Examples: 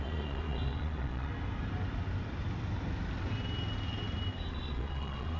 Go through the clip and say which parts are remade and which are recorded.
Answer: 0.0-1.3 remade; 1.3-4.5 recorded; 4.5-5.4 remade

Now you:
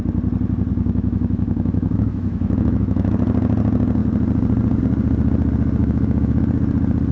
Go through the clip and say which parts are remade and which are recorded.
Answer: 0.0-0.7 recorded; 0.7-3.1 remade; 3.1-5.8 recorded; 5.8-6.4 remade; 6.4-7.1 recorded

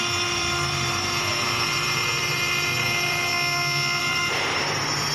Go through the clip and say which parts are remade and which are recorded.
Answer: 0.0-3.3 remade; 3.3-4.0 recorded; 4.0-5.1 remade

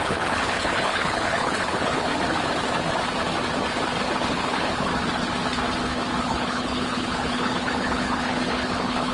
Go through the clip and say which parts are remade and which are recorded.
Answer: 0.0-2.1 remade; 2.1-4.3 recorded; 4.3-4.9 remade; 4.9-6.2 recorded; 6.2-9.1 remade

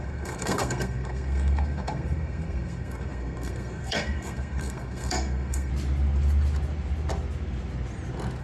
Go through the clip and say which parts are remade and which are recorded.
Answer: 0.0-5.7 remade; 5.7-8.4 recorded

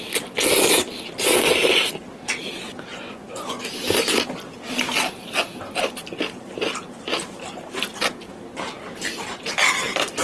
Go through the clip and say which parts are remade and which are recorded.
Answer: 0.0-2.9 recorded; 2.9-3.6 remade; 3.6-10.2 recorded

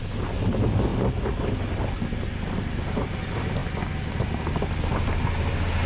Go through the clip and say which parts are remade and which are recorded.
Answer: 0.0-5.9 recorded

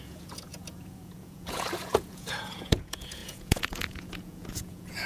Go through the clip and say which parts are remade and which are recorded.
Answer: 0.0-5.1 remade